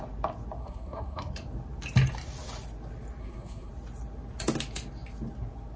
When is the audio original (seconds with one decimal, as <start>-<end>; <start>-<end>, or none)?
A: 0.0-0.6; 1.3-3.2; 3.7-5.8